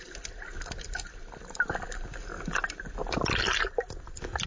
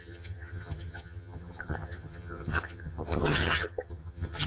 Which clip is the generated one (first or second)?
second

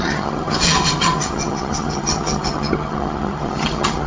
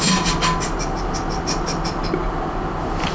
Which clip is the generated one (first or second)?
first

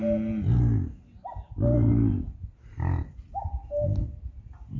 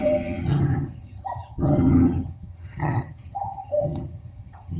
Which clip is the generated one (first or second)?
second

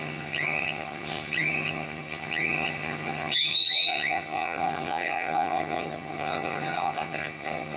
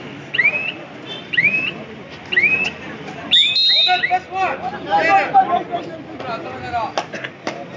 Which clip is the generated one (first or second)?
first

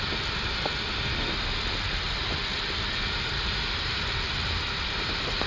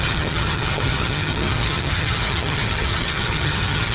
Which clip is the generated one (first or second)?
second